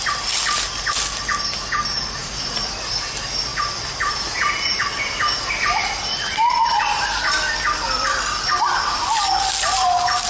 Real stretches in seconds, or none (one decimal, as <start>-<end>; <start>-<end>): 0.0-2.2; 2.7-10.3